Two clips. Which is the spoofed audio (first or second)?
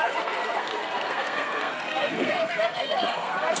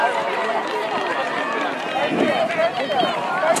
first